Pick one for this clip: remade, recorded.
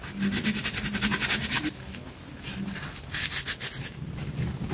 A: recorded